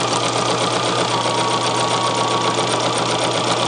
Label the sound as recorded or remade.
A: recorded